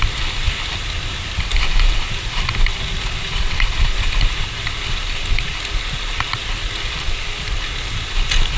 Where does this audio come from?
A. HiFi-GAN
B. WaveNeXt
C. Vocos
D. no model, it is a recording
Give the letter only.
D